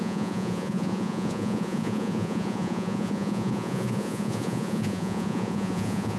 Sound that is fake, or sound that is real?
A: fake